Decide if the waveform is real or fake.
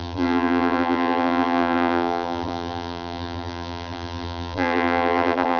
fake